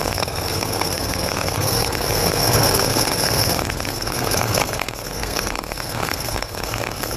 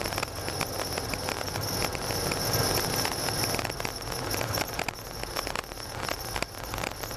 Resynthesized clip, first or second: first